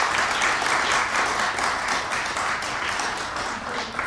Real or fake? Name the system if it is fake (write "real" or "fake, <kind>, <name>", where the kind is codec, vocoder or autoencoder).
real